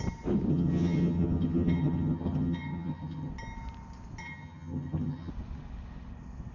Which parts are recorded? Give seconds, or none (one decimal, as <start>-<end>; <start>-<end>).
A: 0.0-0.5; 3.3-4.2; 5.3-6.5